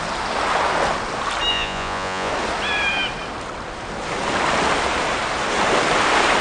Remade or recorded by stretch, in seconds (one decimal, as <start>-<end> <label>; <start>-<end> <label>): 0.0-1.5 recorded; 1.5-2.3 remade; 2.3-6.4 recorded